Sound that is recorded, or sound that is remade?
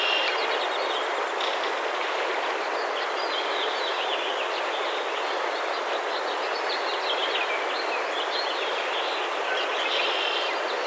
recorded